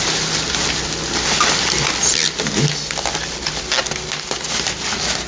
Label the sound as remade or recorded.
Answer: recorded